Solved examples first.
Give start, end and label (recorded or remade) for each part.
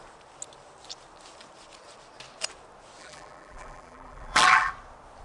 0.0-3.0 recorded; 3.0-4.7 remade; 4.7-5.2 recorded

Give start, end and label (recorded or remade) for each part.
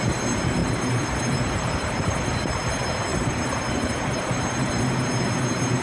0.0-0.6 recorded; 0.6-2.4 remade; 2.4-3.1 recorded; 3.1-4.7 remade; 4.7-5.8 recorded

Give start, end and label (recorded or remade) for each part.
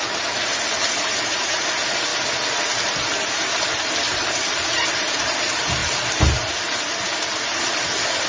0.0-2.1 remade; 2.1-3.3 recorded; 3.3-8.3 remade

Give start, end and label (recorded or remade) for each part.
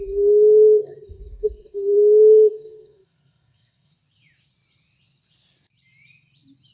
0.0-0.8 recorded; 0.8-3.9 remade; 3.9-6.7 recorded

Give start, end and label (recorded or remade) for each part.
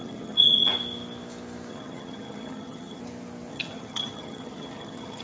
0.0-0.7 remade; 0.7-1.7 recorded; 1.7-3.0 remade; 3.0-3.5 recorded; 3.5-5.2 remade